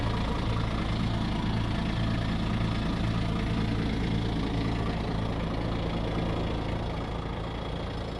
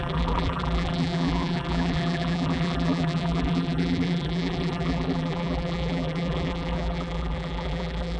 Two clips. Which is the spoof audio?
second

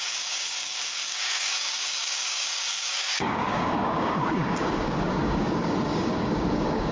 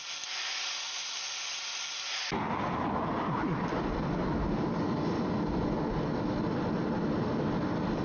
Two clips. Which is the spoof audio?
first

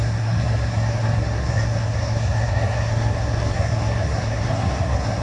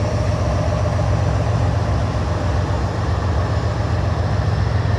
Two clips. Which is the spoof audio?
first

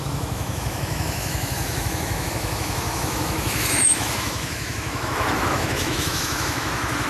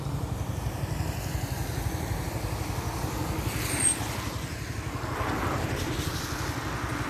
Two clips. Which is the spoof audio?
first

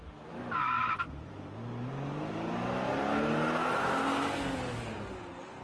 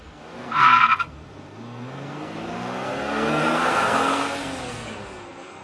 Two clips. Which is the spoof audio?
second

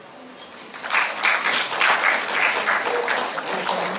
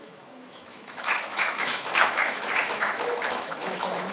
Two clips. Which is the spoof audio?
second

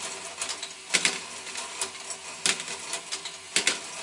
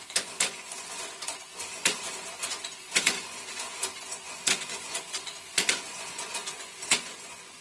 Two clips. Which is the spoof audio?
second